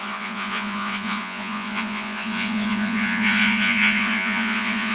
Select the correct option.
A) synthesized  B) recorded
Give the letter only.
A